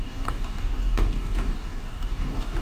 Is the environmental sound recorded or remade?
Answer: remade